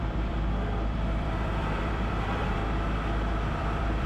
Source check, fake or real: fake